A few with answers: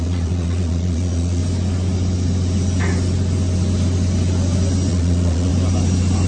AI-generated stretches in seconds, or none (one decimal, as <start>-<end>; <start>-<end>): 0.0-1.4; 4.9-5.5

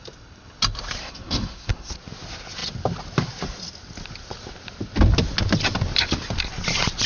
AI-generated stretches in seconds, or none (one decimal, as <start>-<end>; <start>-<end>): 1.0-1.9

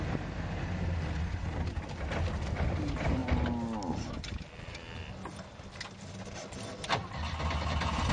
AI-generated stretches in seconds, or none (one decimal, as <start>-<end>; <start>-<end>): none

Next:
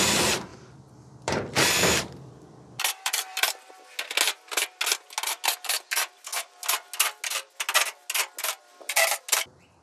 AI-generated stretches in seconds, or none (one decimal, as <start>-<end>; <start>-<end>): 0.5-3.7